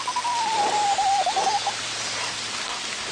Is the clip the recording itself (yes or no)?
yes